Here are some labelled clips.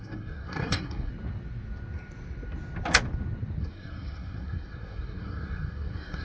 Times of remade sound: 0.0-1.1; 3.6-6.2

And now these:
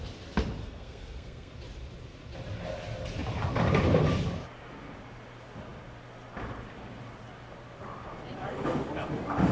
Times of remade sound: 0.6-1.5

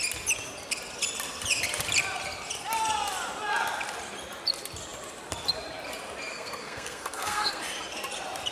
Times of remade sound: 6.3-7.6

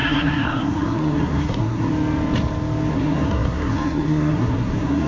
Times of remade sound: 0.0-1.9; 2.9-5.1

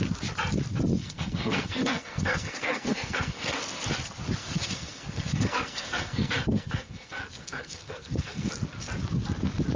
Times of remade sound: 0.9-3.6; 4.4-8.5